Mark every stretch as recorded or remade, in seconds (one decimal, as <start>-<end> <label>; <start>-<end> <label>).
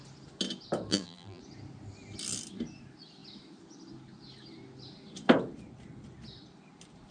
0.0-0.9 recorded; 0.9-1.4 remade; 1.4-7.1 recorded